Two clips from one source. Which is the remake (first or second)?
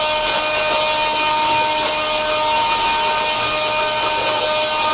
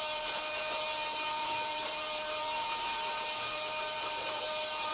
second